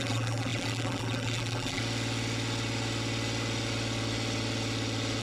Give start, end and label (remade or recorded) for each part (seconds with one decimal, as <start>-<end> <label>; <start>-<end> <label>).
0.0-1.8 remade; 1.8-5.2 recorded